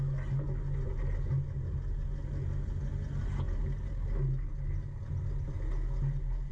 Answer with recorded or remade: recorded